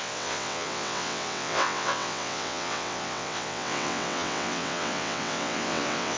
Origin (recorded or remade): remade